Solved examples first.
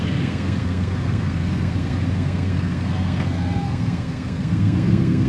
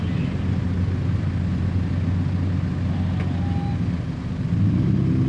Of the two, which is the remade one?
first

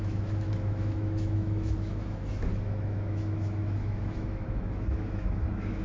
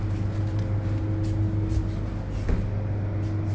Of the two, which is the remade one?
first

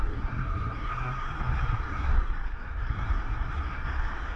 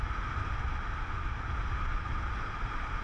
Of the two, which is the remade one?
first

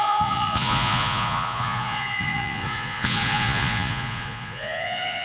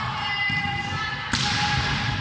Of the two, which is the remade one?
first